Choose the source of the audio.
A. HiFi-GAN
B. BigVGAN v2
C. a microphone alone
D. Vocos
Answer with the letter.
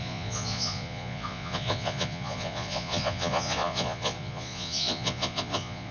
D